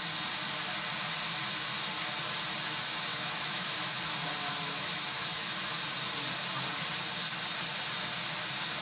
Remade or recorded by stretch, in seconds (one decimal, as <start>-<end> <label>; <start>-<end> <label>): 0.0-3.1 recorded; 3.1-4.1 remade; 4.1-4.5 recorded; 4.5-5.5 remade; 5.5-8.8 recorded